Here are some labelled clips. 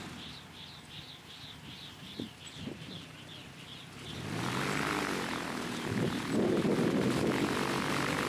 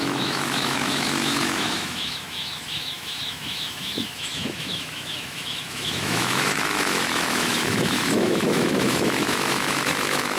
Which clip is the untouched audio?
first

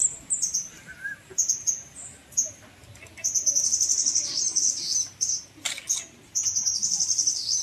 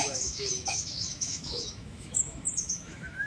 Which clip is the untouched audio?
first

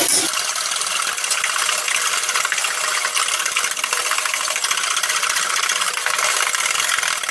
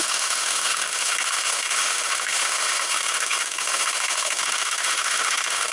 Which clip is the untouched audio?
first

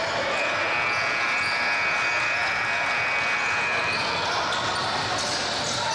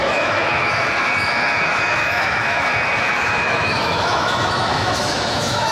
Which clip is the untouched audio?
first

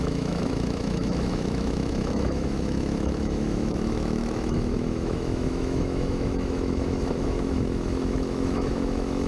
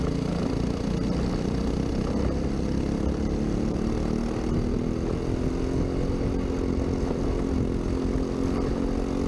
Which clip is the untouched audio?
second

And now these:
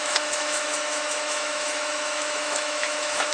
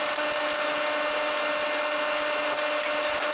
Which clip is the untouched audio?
second